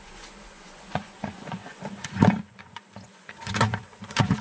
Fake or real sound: fake